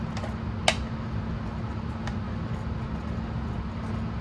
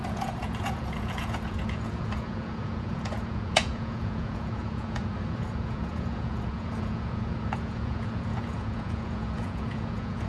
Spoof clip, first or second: second